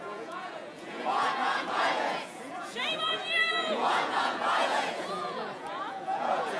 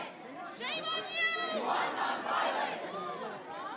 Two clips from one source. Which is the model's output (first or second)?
first